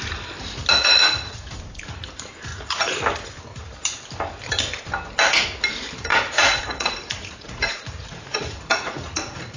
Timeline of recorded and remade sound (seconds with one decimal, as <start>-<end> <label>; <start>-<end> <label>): 0.0-0.7 recorded; 0.7-1.5 remade; 1.5-2.5 recorded; 2.5-3.0 remade; 3.0-6.1 recorded; 6.1-9.6 remade